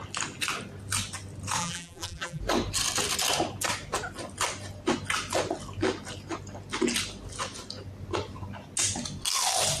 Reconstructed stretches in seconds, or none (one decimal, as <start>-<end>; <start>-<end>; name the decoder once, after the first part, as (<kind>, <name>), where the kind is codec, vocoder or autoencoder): 1.6-2.4 (vocoder, BigVGAN v2)